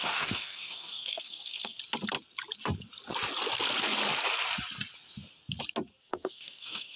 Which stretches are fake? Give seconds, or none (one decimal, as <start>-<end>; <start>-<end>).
0.0-1.8; 6.0-7.0